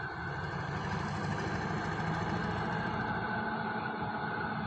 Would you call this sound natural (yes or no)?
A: yes